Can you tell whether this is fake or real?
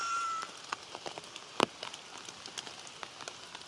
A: real